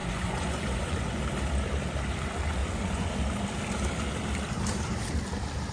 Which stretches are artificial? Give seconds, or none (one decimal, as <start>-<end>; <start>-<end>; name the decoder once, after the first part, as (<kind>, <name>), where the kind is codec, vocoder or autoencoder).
0.0-1.2 (vocoder, Vocos); 2.6-3.1